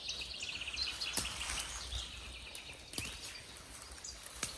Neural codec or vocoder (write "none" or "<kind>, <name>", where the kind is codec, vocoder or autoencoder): none